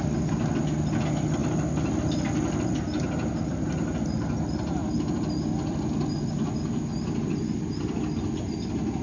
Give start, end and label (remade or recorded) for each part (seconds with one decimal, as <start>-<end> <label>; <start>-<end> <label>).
0.0-9.0 recorded